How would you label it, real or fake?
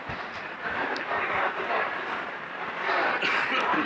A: fake